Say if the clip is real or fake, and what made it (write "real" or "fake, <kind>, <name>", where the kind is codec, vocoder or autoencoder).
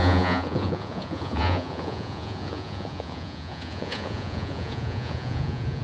fake, vocoder, Vocos